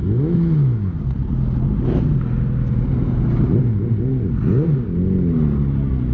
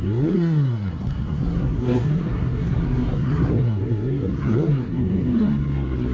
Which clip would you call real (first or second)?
first